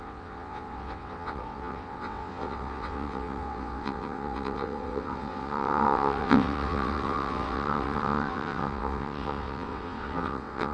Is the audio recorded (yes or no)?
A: no